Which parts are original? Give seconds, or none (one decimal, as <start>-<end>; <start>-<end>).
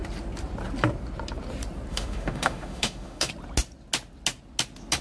0.0-1.9; 3.3-5.0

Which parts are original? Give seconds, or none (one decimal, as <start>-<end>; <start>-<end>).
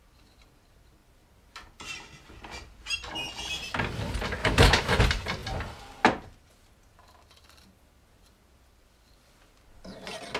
0.0-4.4; 5.0-10.4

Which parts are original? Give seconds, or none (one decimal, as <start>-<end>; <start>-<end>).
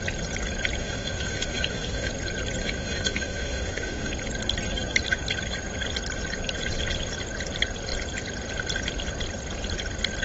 0.0-0.8; 2.1-2.6; 4.1-10.2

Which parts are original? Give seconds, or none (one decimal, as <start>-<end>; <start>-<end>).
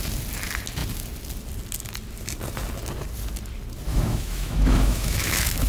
0.0-3.9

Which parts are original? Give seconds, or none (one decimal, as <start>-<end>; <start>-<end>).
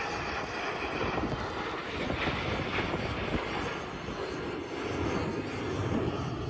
0.0-6.5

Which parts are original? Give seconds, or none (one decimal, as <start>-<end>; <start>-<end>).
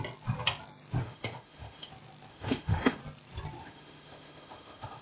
0.0-1.0; 1.9-2.3; 3.0-3.6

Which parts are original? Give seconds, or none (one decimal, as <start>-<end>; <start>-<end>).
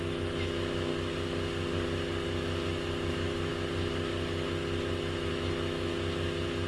0.9-3.1; 3.5-5.3; 5.9-6.7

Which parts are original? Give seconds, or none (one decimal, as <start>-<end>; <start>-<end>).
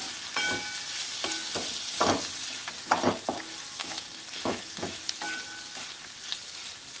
0.0-3.8; 5.0-7.0